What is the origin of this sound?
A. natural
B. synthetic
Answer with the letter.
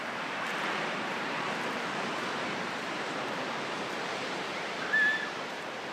B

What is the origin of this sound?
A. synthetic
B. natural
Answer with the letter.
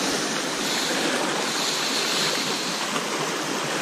B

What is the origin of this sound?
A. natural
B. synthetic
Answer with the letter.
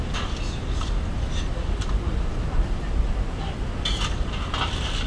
A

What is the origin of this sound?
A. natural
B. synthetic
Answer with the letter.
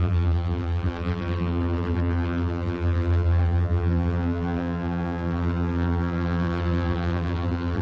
B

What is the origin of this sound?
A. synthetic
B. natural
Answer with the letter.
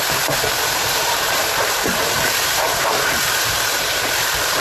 A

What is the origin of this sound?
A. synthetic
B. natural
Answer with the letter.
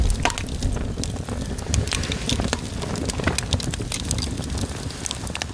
B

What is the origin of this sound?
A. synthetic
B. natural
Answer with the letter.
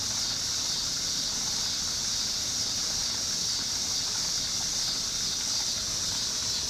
B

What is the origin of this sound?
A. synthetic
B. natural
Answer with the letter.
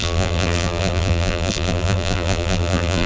A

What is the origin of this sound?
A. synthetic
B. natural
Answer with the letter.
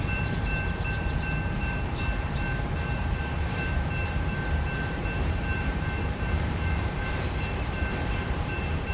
A